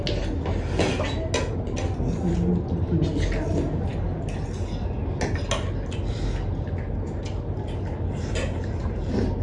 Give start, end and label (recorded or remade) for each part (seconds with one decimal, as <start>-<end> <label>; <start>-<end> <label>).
0.0-9.4 recorded